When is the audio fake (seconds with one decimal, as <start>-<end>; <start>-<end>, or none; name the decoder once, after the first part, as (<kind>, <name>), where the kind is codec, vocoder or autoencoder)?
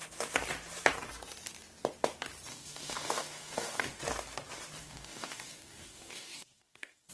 2.5-4.0 (codec, DAC); 4.8-7.1